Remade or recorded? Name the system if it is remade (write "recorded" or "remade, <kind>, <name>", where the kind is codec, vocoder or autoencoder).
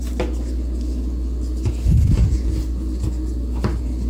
recorded